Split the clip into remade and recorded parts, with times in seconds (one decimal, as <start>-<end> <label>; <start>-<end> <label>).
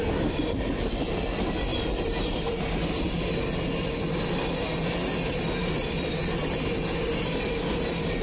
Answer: 0.0-1.7 recorded; 1.7-2.6 remade; 2.6-8.2 recorded